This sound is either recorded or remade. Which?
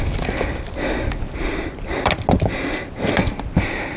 recorded